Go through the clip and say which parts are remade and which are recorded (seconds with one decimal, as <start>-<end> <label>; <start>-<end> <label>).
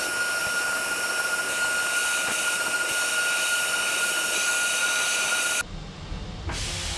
0.0-0.4 recorded; 0.4-1.0 remade; 1.0-7.0 recorded